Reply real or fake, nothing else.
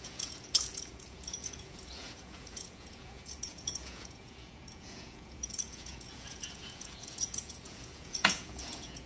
fake